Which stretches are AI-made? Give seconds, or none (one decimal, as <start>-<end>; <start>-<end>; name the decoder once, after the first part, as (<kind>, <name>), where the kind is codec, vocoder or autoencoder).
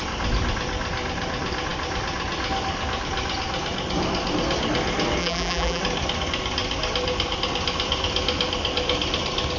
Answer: 5.2-5.8 (vocoder, BigVGAN v2)